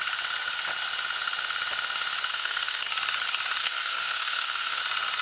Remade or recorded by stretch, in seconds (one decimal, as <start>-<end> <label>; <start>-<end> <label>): 0.0-2.3 recorded; 2.3-2.8 remade; 2.8-3.6 recorded; 3.6-4.8 remade; 4.8-5.2 recorded